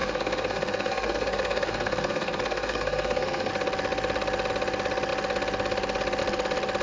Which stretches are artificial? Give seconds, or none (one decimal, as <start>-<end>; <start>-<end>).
0.0-3.5